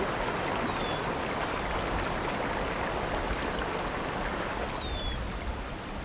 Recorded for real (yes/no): yes